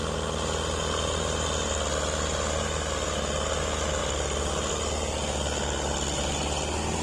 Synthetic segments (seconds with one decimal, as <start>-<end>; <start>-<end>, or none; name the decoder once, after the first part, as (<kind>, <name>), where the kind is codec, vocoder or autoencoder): none